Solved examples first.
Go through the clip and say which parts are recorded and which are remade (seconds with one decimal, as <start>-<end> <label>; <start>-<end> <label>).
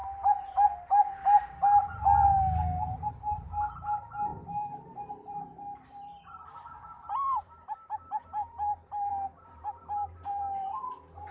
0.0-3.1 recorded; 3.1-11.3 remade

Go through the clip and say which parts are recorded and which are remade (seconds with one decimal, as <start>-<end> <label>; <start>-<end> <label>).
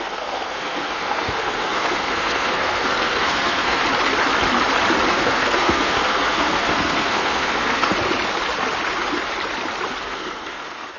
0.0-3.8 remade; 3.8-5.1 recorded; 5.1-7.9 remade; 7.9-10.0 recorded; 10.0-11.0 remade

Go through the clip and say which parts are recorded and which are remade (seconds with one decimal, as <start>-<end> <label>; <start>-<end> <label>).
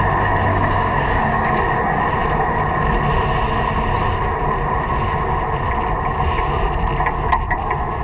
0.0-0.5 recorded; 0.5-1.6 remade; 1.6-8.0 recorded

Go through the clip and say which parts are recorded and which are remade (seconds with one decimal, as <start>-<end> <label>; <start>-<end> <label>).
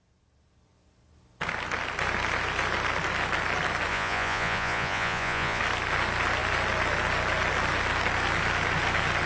0.0-3.9 recorded; 3.9-5.6 remade; 5.6-9.3 recorded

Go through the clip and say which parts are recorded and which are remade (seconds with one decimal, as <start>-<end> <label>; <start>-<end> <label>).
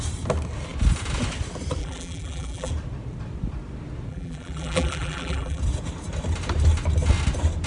0.0-1.8 recorded; 1.8-2.7 remade; 2.7-4.1 recorded; 4.1-5.6 remade; 5.6-7.7 recorded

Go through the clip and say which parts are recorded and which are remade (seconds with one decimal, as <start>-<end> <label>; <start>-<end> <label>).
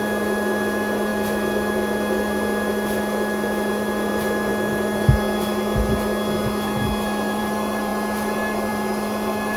0.0-4.5 remade; 4.5-7.4 recorded; 7.4-7.9 remade; 7.9-8.7 recorded; 8.7-9.6 remade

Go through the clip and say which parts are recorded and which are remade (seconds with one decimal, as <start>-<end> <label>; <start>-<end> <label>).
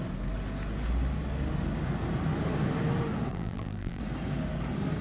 0.0-3.3 recorded; 3.3-4.0 remade; 4.0-5.0 recorded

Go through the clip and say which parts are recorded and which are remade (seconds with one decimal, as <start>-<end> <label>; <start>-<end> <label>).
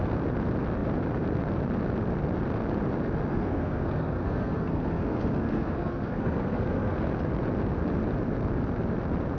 0.0-3.3 recorded; 3.3-7.1 remade; 7.1-9.4 recorded